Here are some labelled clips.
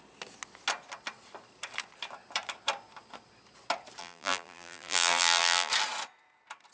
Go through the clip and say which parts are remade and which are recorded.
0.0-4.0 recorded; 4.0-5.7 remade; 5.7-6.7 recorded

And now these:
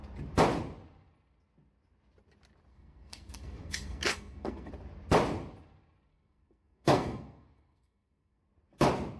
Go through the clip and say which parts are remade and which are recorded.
0.0-2.7 recorded; 2.7-4.7 remade; 4.7-6.1 recorded; 6.1-8.4 remade; 8.4-9.2 recorded

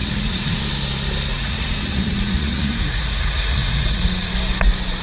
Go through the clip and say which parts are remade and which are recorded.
0.0-0.6 remade; 0.6-1.3 recorded; 1.3-4.3 remade; 4.3-5.0 recorded